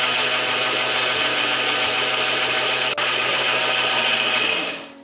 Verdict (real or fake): real